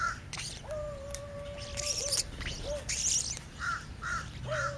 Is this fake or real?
real